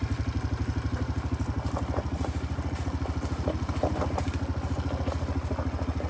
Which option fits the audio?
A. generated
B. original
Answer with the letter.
B